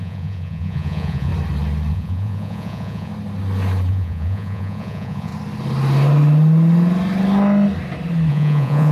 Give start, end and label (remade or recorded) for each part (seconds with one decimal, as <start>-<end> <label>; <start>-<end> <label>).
0.0-1.3 remade; 1.3-1.9 recorded; 1.9-3.1 remade; 3.1-3.9 recorded; 3.9-5.3 remade; 5.3-8.3 recorded; 8.3-8.9 remade